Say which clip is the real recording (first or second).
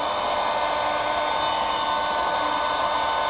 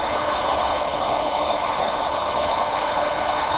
first